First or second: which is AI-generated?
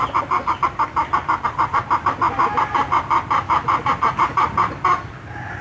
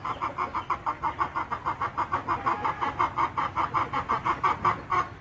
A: first